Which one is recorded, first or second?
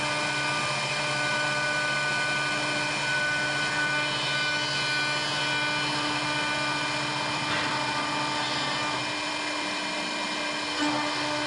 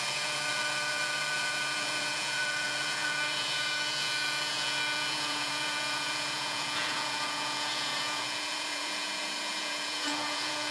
first